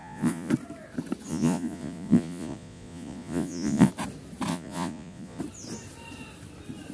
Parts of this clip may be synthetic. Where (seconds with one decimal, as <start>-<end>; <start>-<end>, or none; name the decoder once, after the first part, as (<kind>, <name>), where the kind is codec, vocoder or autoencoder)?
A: 0.0-0.5 (vocoder, Vocos); 1.3-3.9; 4.5-5.4